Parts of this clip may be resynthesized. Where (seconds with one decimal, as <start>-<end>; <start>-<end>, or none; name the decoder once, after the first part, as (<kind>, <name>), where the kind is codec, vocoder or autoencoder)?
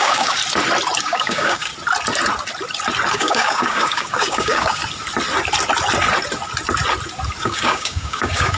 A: 0.0-0.4 (codec, DAC); 1.0-1.7; 3.1-4.8; 7.4-8.6